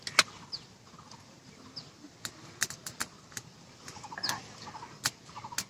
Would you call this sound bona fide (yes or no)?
yes